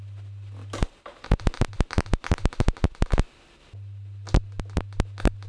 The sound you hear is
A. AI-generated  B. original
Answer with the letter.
B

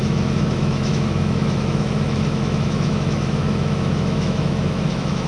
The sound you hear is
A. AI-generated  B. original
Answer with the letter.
A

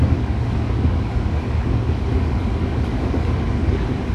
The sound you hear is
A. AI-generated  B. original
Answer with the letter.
A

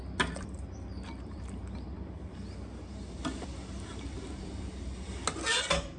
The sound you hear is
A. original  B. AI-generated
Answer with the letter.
A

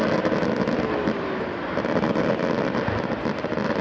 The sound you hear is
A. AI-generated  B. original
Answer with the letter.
B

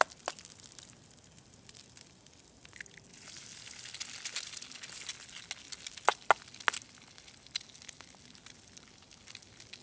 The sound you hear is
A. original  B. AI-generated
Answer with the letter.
A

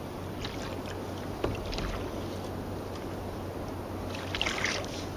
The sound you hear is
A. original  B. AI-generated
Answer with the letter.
A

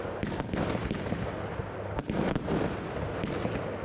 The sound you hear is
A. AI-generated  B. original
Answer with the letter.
B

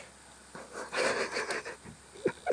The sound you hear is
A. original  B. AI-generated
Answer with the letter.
A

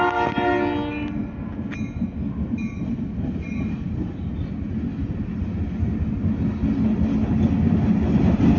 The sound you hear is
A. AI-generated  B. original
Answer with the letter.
B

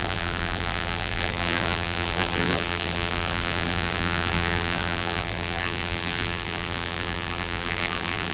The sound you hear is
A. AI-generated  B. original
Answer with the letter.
A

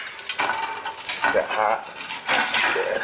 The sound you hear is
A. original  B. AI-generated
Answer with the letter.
A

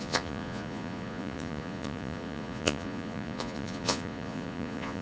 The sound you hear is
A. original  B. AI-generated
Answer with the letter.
B